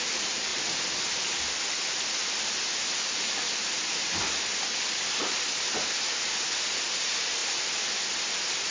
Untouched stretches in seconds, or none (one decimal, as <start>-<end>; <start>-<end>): 0.0-8.7